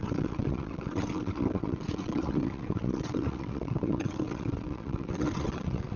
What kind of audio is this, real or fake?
fake